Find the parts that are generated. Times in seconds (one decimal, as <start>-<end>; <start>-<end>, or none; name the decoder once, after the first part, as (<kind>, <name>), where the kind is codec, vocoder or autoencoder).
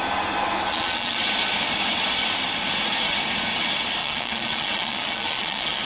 0.7-1.2 (vocoder, Vocos); 4.0-5.8